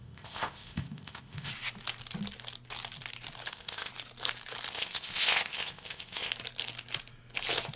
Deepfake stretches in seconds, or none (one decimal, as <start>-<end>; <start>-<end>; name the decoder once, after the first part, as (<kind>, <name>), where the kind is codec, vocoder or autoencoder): 0.0-1.5 (codec, ZipCodec); 3.5-3.9; 4.7-6.3